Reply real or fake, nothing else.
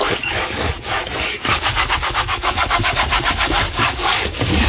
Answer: fake